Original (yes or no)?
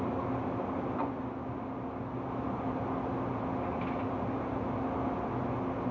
yes